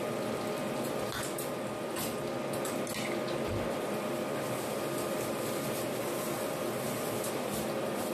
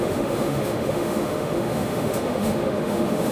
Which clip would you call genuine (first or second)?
first